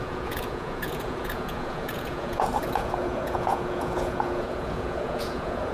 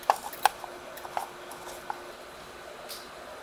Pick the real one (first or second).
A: second